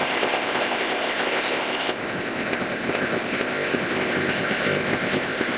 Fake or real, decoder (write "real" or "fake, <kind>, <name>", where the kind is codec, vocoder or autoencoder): fake, codec, ZipCodec